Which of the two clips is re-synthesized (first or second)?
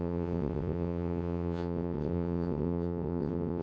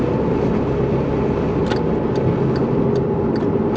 first